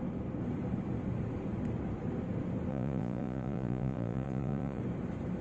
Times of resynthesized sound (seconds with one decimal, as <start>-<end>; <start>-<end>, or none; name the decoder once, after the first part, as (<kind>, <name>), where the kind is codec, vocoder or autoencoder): 2.7-4.8 (vocoder, Vocos)